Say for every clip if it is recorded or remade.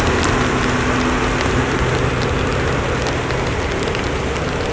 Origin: recorded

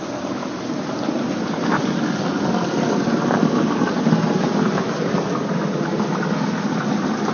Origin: recorded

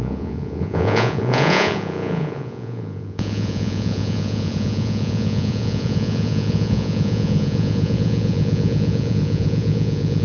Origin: remade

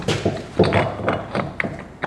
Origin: recorded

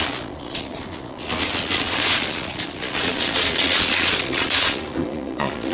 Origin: remade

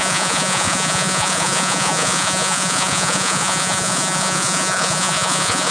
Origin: remade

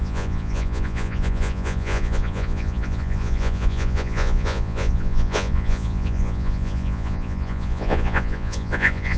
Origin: remade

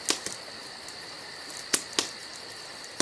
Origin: recorded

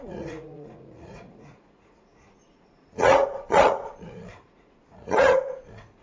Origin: remade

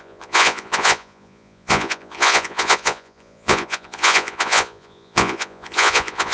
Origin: remade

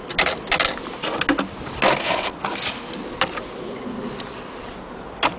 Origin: recorded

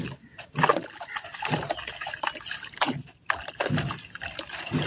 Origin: recorded